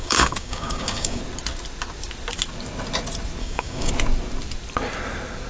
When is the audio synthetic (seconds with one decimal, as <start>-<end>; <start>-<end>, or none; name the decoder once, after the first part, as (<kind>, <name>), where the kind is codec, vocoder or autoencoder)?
0.0-1.2 (codec, DAC); 3.4-3.9